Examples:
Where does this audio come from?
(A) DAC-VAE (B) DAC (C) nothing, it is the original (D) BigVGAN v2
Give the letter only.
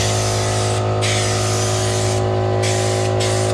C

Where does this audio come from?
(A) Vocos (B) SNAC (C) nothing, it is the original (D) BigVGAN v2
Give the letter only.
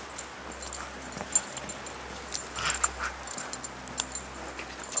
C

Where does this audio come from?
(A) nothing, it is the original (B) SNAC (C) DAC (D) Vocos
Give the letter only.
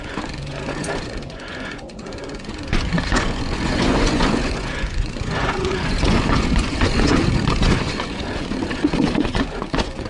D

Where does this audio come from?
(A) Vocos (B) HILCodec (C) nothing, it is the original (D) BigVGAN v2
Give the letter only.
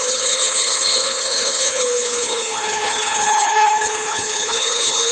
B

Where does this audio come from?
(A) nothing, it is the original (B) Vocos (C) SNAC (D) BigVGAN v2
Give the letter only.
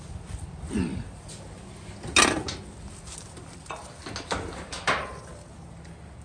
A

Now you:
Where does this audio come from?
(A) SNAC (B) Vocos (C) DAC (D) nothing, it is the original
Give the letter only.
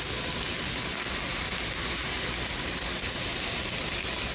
D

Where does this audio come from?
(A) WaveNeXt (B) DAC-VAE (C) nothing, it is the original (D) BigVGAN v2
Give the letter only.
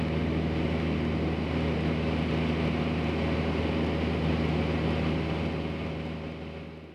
C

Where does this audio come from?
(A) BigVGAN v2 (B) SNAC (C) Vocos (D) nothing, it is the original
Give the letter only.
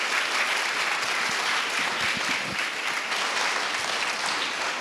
D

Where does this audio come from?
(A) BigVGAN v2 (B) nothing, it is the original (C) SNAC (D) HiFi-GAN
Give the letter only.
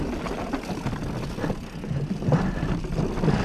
B